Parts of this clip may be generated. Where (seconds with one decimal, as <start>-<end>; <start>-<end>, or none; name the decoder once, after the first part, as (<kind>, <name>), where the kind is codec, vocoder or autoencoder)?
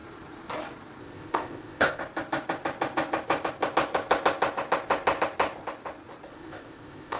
1.0-2.0 (codec, ZipCodec); 6.3-7.2